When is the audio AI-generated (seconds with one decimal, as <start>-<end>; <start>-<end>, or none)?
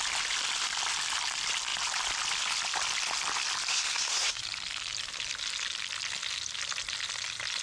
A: 3.7-4.4